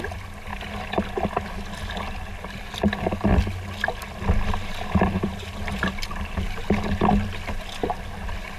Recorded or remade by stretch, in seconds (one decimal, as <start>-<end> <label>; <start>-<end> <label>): 0.0-5.3 recorded; 5.3-6.6 remade; 6.6-8.6 recorded